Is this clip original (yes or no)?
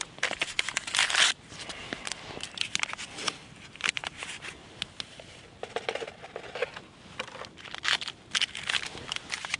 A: yes